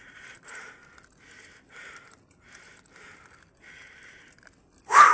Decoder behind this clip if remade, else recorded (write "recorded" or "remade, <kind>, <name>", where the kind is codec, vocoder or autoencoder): recorded